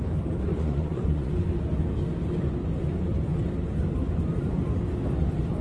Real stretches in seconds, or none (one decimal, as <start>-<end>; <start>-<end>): 0.0-0.5; 1.3-5.6